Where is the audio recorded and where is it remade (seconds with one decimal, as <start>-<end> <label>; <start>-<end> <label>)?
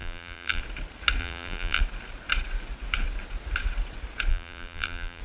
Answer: 0.0-0.6 remade; 0.6-1.2 recorded; 1.2-1.8 remade; 1.8-4.3 recorded; 4.3-5.2 remade